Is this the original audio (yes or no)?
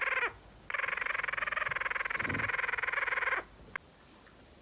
yes